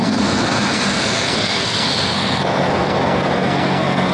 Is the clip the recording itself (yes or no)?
no